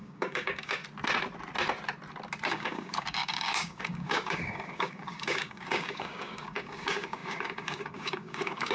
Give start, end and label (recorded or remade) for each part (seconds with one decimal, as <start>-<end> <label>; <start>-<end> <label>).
0.0-0.8 remade; 0.8-2.5 recorded; 2.5-8.7 remade